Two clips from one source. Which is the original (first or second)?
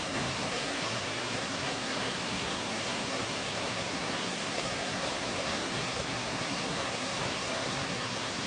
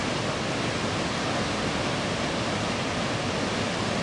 second